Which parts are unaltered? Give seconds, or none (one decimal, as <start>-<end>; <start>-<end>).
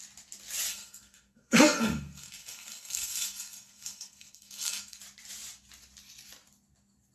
0.0-0.7; 5.0-7.1